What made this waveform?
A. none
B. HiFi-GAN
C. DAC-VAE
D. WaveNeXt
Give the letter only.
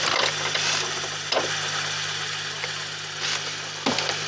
A